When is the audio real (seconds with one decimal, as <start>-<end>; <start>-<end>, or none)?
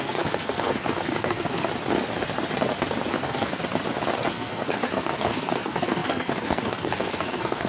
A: 1.6-3.1; 3.6-4.3